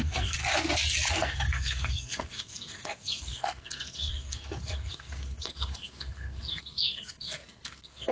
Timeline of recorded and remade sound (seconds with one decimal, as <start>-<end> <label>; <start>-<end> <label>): 0.0-0.4 remade; 0.4-1.1 recorded; 1.1-8.1 remade